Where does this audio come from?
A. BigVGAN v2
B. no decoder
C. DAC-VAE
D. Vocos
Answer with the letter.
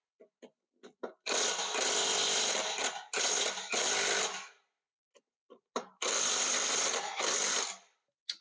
B